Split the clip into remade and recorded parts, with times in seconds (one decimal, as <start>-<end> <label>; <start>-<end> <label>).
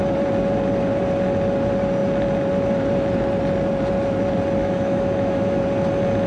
0.0-4.6 recorded; 4.6-5.6 remade; 5.6-6.3 recorded